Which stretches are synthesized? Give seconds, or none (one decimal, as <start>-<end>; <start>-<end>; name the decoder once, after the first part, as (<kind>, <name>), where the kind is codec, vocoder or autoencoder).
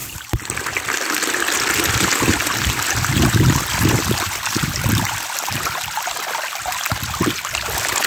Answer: 0.0-1.6 (vocoder, BigVGAN v2); 4.6-6.4